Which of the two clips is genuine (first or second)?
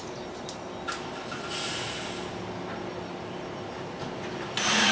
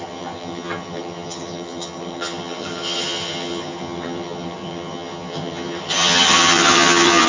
first